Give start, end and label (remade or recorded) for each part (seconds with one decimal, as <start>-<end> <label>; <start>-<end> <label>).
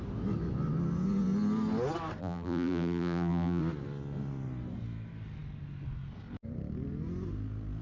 0.0-2.2 recorded; 2.2-3.6 remade; 3.6-7.8 recorded